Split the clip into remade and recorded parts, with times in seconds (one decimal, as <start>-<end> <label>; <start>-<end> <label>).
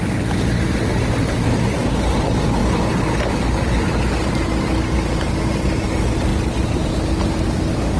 0.0-6.3 recorded; 6.3-6.9 remade; 6.9-8.0 recorded